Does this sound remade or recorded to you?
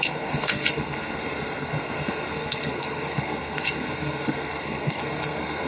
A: remade